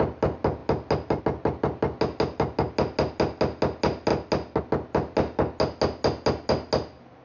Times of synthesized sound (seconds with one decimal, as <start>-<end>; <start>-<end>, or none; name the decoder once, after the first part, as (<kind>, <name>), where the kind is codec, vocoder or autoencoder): none